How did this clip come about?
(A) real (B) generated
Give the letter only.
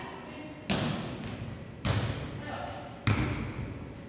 A